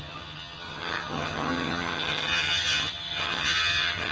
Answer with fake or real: fake